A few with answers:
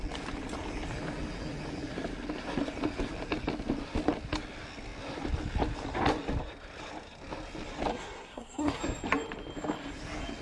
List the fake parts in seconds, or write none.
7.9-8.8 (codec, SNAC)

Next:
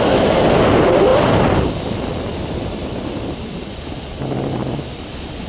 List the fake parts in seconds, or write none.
none

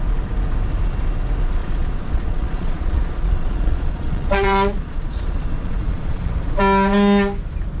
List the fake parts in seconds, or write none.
1.6-6.3 (vocoder, Vocos)

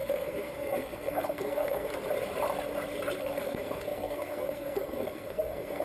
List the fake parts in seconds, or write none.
0.0-1.9 (codec, SNAC); 3.2-5.8

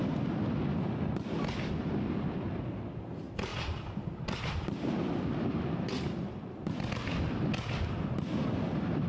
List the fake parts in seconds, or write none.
none